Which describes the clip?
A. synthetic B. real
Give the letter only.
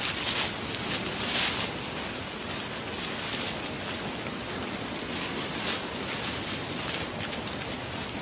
B